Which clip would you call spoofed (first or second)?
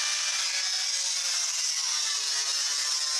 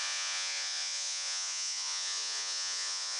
second